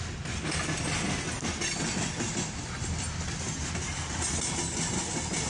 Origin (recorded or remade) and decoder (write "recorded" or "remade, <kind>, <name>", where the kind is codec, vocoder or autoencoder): recorded